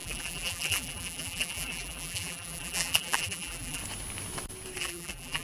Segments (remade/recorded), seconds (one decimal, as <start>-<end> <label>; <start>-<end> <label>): 0.0-3.8 remade; 3.8-4.8 recorded; 4.8-5.4 remade